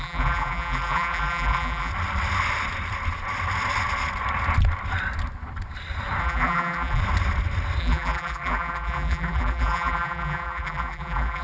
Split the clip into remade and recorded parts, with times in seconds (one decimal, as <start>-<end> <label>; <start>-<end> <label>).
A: 0.0-1.9 remade; 1.9-6.2 recorded; 6.2-7.0 remade; 7.0-7.8 recorded; 7.8-11.4 remade